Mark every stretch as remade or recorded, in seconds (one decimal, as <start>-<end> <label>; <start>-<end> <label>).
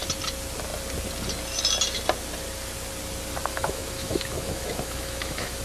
0.0-3.5 recorded; 3.5-5.6 remade